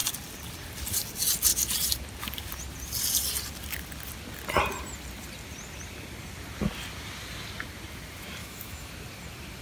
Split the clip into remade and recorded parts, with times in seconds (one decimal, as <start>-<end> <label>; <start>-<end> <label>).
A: 0.0-8.4 recorded; 8.4-8.9 remade; 8.9-9.6 recorded